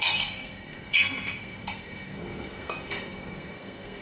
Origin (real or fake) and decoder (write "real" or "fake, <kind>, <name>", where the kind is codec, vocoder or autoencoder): fake, codec, SNAC